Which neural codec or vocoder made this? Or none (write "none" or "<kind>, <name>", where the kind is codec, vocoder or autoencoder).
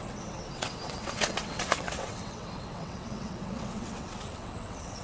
vocoder, WaveNeXt